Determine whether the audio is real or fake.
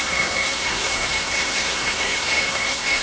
fake